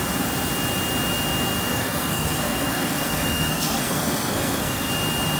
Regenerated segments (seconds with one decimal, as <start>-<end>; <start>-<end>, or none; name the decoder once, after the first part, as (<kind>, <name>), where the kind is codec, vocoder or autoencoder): 1.7-4.9 (codec, SNAC)